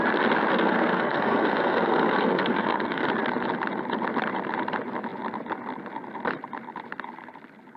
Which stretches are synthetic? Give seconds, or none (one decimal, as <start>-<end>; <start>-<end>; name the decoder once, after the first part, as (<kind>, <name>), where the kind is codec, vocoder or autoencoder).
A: 0.5-3.1 (codec, SNAC)

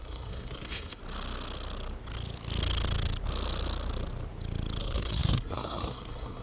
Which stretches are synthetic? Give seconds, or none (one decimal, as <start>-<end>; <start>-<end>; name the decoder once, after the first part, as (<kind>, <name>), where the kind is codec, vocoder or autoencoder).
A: 0.0-1.0 (codec, SNAC); 4.8-6.4

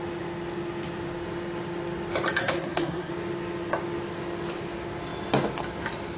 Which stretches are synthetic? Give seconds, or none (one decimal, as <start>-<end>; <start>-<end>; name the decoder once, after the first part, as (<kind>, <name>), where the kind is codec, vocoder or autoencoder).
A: 2.4-3.1 (codec, SNAC)

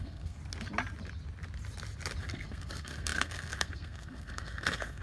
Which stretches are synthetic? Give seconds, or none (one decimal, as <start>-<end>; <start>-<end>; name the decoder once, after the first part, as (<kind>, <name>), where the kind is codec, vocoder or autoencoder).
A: 0.0-0.4 (codec, SNAC); 2.2-5.0

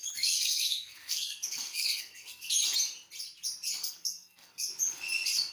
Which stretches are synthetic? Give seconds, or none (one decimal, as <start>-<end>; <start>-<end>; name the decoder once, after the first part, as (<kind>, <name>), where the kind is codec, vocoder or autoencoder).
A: 0.0-2.5 (codec, SNAC); 3.8-4.7

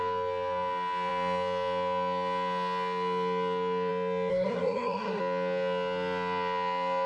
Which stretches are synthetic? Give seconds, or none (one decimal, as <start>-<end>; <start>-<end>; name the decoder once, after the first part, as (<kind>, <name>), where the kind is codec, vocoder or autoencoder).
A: 4.3-5.2 (codec, SNAC)

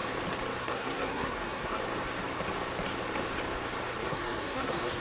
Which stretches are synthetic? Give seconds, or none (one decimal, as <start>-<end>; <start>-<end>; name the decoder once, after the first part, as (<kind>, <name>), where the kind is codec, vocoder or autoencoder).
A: 0.6-1.8 (codec, SNAC); 4.0-5.0

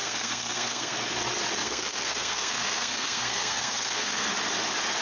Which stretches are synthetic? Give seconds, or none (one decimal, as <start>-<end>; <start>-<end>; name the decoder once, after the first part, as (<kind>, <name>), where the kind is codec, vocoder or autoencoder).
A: 0.0-1.0 (codec, SNAC); 1.6-4.3